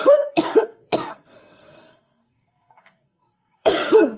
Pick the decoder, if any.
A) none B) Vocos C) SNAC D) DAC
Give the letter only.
C